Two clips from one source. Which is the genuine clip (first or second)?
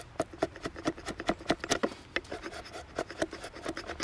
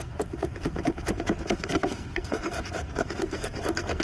first